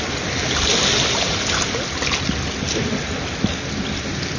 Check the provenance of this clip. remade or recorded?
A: recorded